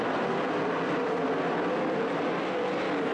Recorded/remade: recorded